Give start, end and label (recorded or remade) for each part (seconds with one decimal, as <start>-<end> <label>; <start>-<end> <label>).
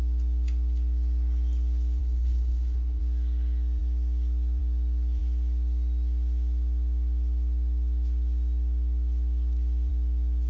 0.0-2.0 recorded; 2.0-3.0 remade; 3.0-10.5 recorded